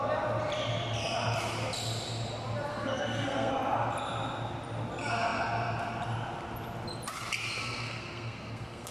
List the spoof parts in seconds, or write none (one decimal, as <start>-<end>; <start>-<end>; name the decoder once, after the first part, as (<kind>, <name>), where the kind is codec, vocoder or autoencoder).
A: 2.7-3.5 (codec, SNAC); 7.6-8.9